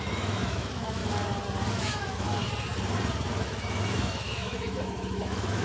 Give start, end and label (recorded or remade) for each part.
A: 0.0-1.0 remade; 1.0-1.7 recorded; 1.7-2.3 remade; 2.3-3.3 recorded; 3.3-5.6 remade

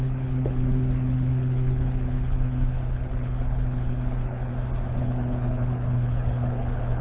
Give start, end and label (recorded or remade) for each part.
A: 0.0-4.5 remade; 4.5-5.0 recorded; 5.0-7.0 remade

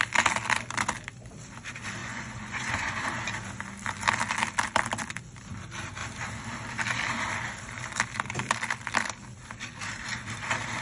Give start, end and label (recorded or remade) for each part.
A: 0.0-2.0 recorded; 2.0-2.9 remade; 2.9-10.8 recorded

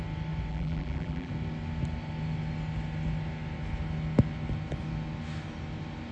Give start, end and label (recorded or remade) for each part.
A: 0.0-0.5 recorded; 0.5-1.3 remade; 1.3-6.1 recorded